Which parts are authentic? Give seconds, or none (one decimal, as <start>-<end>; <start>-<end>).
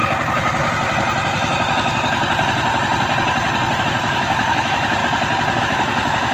0.0-3.8; 5.0-5.6